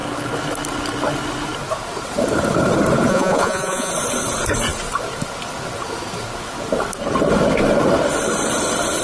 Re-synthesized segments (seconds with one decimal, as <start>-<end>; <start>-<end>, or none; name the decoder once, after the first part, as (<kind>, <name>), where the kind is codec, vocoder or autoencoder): 3.1-3.9 (vocoder, Vocos)